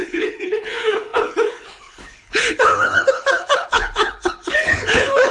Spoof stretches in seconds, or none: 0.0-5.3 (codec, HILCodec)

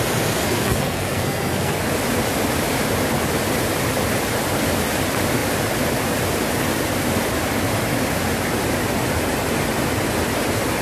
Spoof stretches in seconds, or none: 0.4-1.8 (codec, SNAC)

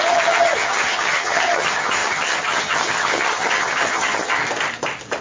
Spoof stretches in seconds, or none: 0.0-4.4 (vocoder, HiFi-GAN)

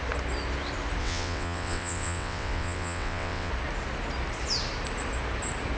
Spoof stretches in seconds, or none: 1.0-3.5 (vocoder, WaveNeXt)

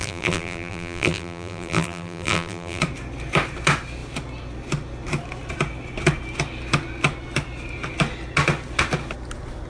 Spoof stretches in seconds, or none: 0.0-2.8 (vocoder, BigVGAN v2)

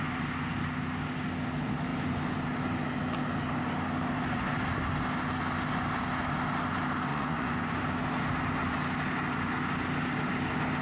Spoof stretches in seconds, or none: 7.1-7.8 (vocoder, Vocos)

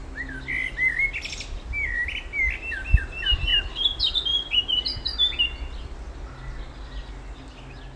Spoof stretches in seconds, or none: none